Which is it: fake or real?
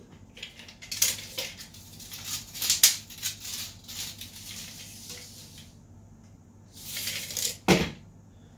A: real